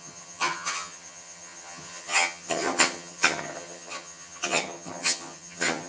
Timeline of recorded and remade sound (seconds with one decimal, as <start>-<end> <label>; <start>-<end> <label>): 0.0-5.9 remade